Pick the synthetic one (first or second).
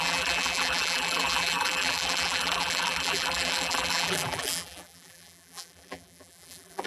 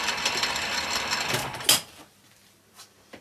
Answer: first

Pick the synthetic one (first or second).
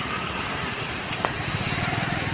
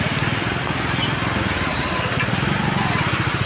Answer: first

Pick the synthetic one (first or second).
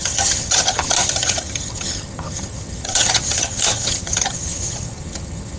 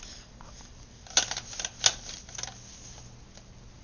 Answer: first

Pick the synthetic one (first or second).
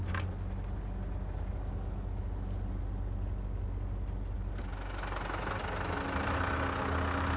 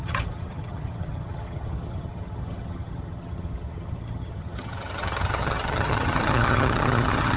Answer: second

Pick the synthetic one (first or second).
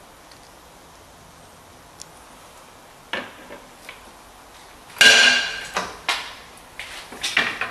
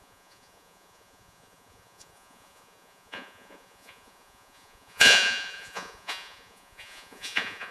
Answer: second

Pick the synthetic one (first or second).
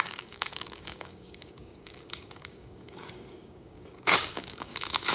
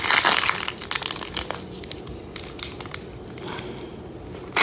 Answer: first